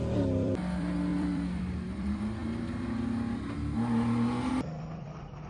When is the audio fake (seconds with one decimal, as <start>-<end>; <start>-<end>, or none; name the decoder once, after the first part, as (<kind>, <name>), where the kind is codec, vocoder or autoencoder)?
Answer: 0.0-2.4 (vocoder, BigVGAN v2); 4.5-5.5